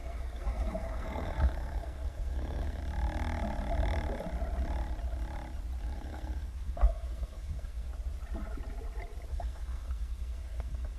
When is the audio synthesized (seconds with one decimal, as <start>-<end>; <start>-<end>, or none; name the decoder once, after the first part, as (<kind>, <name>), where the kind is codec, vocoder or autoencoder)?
0.0-2.8 (codec, SNAC); 5.8-7.9; 9.3-11.0